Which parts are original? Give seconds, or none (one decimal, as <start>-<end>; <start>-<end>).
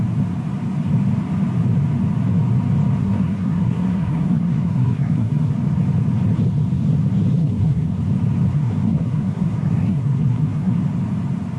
0.0-3.0; 5.5-7.4; 8.0-8.5; 10.7-11.6